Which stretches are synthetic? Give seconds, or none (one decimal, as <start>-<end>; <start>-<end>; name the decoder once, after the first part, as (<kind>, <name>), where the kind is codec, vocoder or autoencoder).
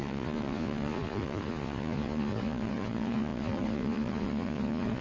0.0-5.0 (vocoder, Vocos)